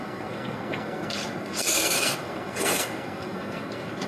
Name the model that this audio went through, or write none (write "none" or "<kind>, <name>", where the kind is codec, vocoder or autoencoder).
codec, SNAC